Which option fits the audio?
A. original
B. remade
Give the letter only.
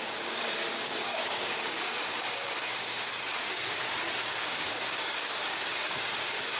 B